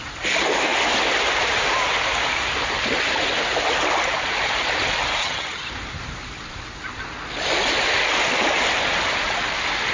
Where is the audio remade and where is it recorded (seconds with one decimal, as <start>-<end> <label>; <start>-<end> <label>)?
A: 0.0-5.2 recorded; 5.2-5.7 remade; 5.7-9.9 recorded